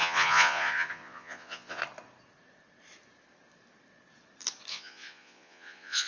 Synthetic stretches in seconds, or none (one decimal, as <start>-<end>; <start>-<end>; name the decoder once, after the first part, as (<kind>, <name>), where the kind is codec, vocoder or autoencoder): 0.0-1.8 (vocoder, Vocos); 4.7-6.1